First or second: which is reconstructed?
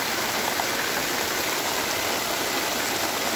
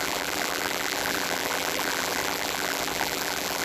second